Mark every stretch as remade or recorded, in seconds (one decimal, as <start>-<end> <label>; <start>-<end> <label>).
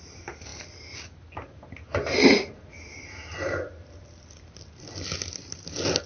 0.0-6.1 recorded